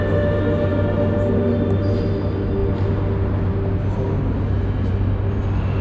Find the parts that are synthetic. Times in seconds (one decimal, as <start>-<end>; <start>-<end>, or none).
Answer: none